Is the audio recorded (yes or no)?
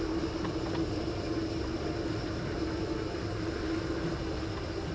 yes